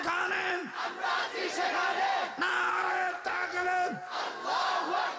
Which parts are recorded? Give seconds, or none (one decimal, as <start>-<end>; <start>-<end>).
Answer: 0.0-2.7; 4.2-5.2

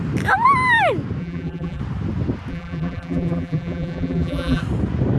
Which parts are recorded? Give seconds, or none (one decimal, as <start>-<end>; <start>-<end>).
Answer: 0.0-1.2; 1.8-2.5; 4.6-5.2